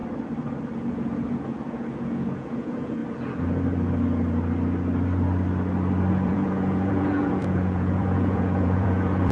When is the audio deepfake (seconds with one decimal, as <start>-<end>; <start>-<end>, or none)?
0.9-3.0; 6.1-9.3